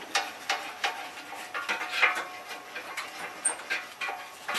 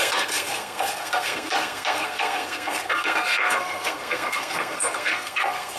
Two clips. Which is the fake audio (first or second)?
second